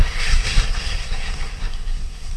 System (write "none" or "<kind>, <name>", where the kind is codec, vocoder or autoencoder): codec, SNAC